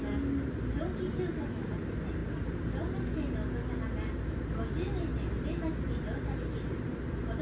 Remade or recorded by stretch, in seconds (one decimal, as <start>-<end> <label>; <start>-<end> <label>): 0.0-2.2 recorded; 2.2-3.1 remade; 3.1-5.1 recorded; 5.1-6.0 remade; 6.0-7.4 recorded